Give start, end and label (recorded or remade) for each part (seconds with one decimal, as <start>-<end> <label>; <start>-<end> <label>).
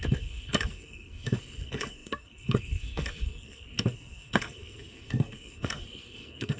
0.0-6.6 remade